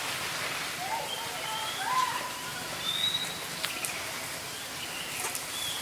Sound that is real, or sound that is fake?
real